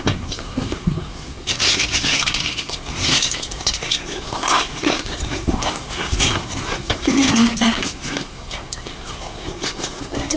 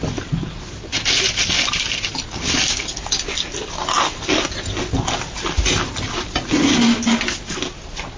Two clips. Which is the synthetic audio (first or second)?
first